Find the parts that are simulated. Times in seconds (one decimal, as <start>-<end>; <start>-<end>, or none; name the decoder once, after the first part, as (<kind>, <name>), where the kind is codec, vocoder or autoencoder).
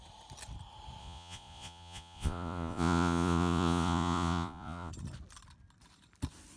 1.0-4.9 (vocoder, Vocos)